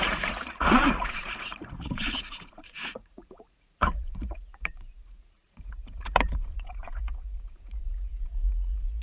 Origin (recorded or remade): remade